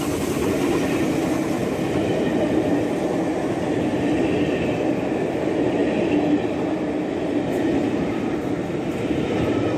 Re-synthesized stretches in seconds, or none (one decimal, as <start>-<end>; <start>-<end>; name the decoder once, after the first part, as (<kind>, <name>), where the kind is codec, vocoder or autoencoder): none